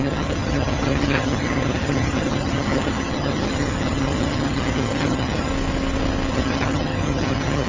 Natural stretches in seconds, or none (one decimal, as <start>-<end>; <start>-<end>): 5.5-6.3